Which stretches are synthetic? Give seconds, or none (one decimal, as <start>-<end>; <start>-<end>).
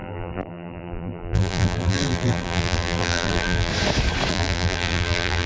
0.0-3.7; 4.3-5.5